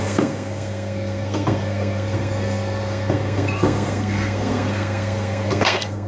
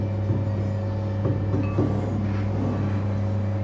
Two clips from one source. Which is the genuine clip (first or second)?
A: second